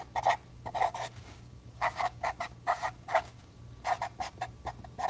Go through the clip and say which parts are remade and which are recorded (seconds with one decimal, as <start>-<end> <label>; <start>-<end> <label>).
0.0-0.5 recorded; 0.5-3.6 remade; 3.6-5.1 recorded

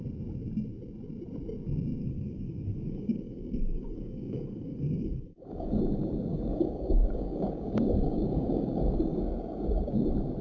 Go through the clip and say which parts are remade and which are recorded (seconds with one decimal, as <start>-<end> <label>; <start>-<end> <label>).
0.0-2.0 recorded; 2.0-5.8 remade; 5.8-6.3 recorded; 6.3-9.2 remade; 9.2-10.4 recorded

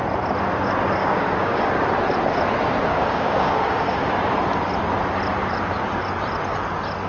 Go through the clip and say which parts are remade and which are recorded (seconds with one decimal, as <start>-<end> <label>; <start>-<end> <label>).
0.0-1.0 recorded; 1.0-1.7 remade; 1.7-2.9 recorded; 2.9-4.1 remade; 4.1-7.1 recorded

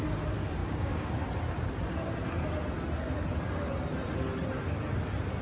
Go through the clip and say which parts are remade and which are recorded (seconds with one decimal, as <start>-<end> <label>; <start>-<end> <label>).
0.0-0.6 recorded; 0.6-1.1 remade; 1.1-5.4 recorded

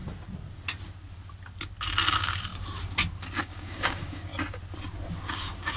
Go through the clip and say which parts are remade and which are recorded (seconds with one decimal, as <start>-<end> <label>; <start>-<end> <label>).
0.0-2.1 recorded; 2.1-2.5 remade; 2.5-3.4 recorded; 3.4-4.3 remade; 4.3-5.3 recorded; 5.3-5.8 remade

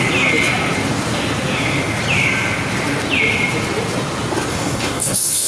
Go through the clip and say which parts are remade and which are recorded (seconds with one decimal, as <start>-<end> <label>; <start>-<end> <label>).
0.0-4.5 recorded; 4.5-5.5 remade

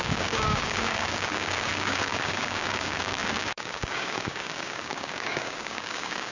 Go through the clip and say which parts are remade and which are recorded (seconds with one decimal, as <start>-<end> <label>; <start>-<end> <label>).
0.0-6.3 remade